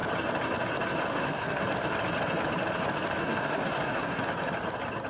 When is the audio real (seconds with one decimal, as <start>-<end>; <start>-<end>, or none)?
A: 0.0-1.1; 1.6-3.2; 4.2-5.1